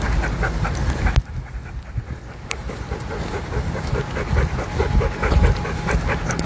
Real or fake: real